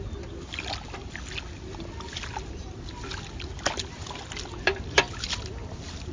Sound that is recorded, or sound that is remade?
recorded